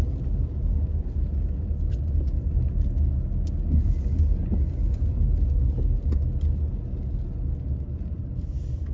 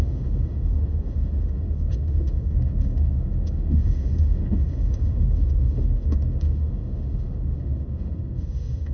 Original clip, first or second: first